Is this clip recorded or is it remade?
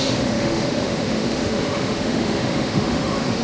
remade